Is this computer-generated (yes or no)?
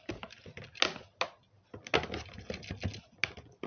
no